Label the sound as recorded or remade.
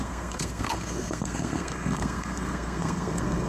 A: remade